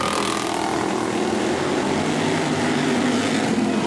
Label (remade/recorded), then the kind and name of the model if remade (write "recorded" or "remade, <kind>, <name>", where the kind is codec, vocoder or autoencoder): recorded